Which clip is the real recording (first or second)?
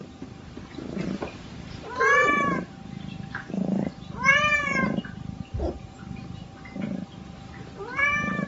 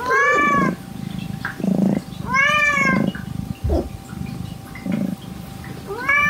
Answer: second